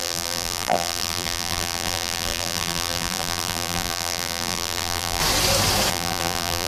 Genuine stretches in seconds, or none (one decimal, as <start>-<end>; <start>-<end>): 5.2-5.9

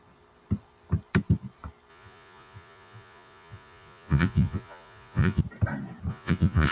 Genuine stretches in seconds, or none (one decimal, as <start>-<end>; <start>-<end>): 0.0-1.9; 5.4-6.1

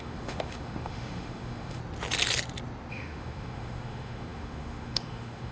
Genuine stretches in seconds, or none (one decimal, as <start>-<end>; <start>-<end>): 1.8-2.9

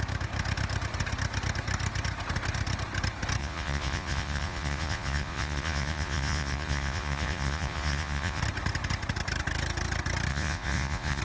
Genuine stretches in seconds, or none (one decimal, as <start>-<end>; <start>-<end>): 0.0-3.4; 8.4-10.3

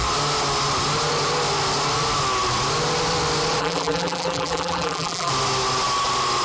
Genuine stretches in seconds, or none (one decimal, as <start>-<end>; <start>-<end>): 0.0-3.6; 5.3-6.4